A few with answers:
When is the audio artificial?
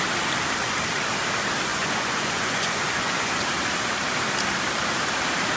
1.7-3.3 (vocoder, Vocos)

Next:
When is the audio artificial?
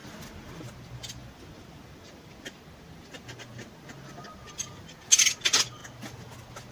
none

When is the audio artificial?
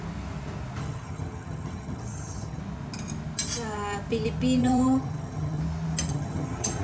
0.8-2.6 (vocoder, HiFi-GAN); 4.6-5.6; 6.1-6.8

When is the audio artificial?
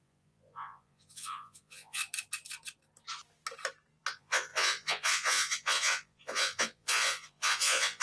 0.0-2.0 (vocoder, Vocos); 4.1-8.0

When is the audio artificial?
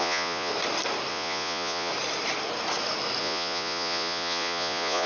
0.0-0.5 (vocoder, Vocos); 1.1-1.9; 3.2-5.1